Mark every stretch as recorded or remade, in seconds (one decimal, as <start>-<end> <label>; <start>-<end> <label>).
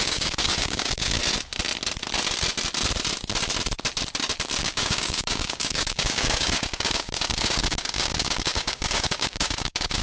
0.0-1.2 remade; 1.2-4.6 recorded; 4.6-10.0 remade